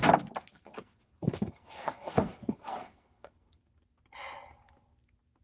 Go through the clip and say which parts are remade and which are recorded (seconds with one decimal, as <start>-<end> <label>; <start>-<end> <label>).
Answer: 0.0-0.5 recorded; 0.5-3.7 remade; 3.7-5.4 recorded